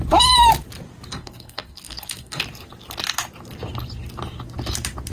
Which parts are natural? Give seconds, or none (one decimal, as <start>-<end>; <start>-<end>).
0.0-1.1; 2.4-5.1